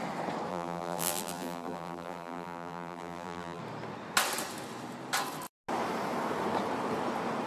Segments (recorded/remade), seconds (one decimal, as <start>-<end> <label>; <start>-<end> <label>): 0.0-0.5 recorded; 0.5-3.6 remade; 3.6-7.5 recorded